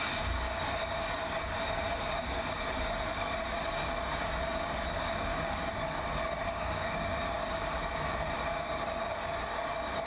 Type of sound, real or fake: fake